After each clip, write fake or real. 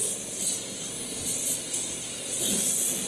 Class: real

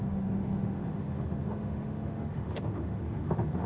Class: fake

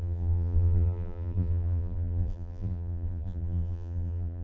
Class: fake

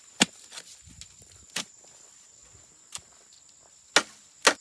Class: real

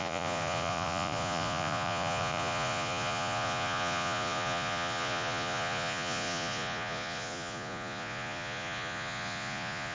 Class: fake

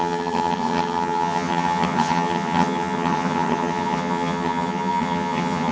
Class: fake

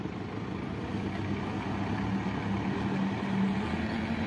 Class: real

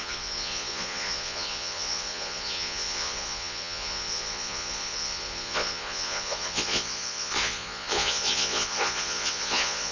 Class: fake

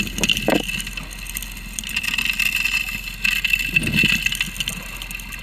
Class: real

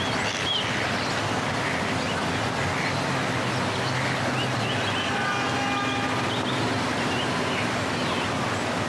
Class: real